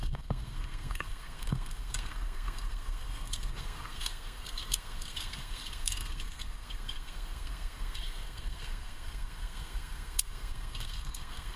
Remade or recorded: remade